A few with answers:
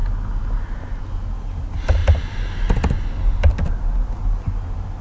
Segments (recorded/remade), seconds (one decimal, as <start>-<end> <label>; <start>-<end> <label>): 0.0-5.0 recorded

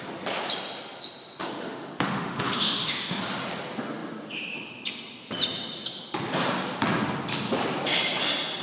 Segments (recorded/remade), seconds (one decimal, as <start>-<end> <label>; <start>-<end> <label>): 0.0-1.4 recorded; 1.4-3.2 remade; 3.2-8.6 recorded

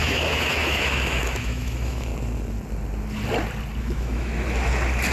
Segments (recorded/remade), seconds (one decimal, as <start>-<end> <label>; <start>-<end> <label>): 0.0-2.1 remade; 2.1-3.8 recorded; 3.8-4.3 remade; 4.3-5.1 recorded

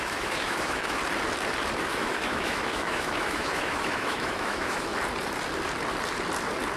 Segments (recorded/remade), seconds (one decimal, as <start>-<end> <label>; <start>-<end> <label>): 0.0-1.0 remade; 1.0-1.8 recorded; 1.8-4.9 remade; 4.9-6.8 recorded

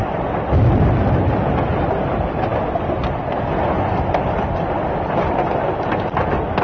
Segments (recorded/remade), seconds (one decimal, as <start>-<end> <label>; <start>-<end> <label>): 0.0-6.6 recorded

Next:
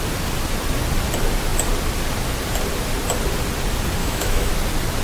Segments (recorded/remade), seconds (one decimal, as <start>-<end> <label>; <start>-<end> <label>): 0.0-4.0 recorded; 4.0-4.5 remade; 4.5-5.0 recorded

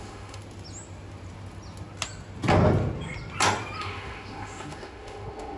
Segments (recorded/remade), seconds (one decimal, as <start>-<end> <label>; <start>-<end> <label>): 0.0-0.4 remade; 0.4-3.8 recorded; 3.8-5.6 remade

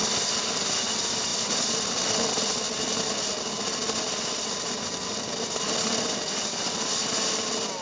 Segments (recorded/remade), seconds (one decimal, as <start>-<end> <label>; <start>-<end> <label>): 0.0-7.8 recorded